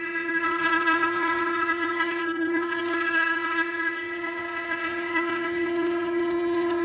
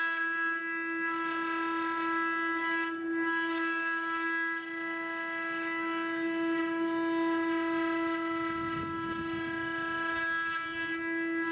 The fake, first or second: first